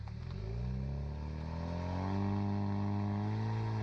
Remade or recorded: recorded